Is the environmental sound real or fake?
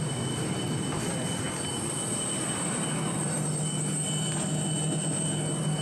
real